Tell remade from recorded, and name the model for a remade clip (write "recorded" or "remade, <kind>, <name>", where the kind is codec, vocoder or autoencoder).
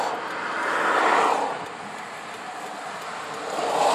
recorded